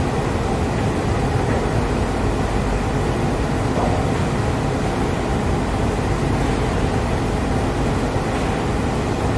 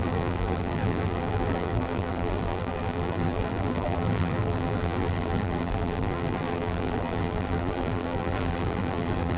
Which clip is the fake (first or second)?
second